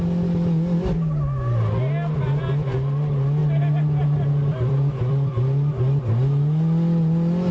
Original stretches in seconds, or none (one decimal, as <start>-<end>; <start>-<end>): 0.0-3.4; 5.4-7.5